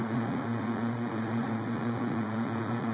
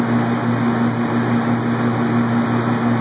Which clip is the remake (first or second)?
first